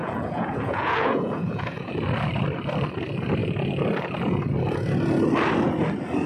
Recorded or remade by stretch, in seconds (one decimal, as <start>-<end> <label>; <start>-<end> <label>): 0.0-1.9 remade; 1.9-6.3 recorded